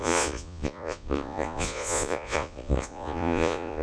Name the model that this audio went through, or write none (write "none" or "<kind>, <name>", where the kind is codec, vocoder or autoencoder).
vocoder, Vocos